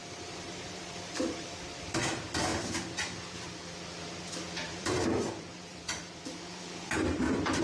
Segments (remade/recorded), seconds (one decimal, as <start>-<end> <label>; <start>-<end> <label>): 0.0-7.6 remade